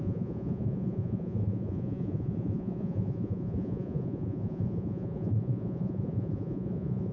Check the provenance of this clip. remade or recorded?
remade